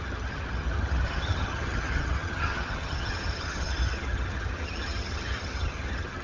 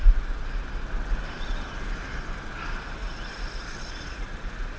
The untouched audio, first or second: second